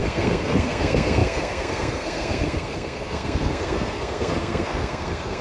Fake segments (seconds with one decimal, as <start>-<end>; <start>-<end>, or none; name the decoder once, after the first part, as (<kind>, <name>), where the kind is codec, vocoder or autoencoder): 0.0-5.4 (codec, SNAC)